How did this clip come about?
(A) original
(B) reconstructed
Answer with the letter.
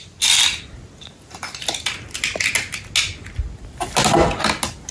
A